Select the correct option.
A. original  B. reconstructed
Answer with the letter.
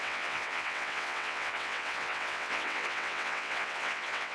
B